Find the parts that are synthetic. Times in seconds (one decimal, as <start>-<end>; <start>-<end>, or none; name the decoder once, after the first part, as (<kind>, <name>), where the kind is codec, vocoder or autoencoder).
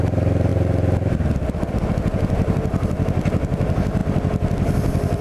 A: none